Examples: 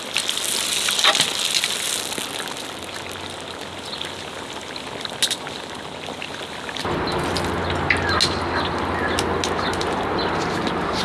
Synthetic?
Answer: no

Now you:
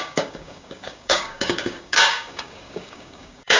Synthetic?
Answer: yes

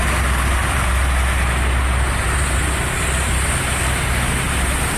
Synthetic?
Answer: no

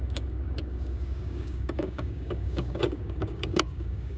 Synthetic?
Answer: yes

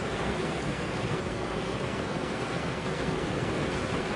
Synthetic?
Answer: yes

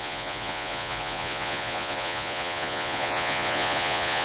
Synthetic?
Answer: yes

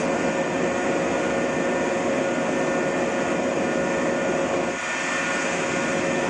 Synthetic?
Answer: no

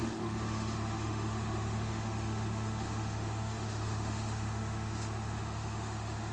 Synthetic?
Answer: yes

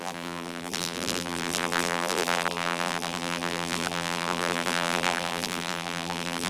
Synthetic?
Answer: yes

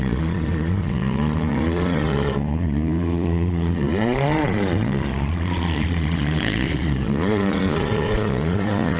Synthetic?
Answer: yes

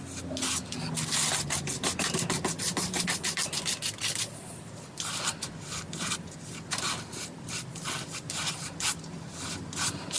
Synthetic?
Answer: no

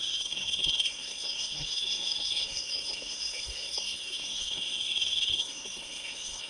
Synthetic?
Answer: yes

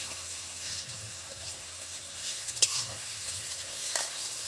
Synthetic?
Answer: yes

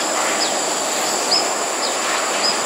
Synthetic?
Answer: no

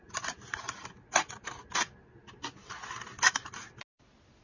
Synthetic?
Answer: no